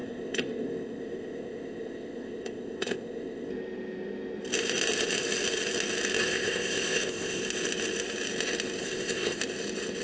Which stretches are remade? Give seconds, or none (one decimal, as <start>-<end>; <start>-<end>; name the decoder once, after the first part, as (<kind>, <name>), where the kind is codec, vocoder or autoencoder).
0.0-3.5 (codec, ZipCodec); 6.2-7.4; 8.8-9.4